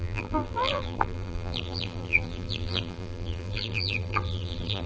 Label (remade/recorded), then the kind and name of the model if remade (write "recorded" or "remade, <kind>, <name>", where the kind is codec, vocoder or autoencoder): remade, vocoder, BigVGAN v2